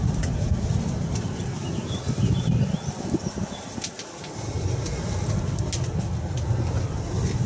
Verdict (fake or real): real